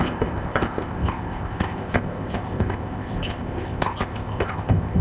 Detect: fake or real fake